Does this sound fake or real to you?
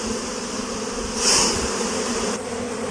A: real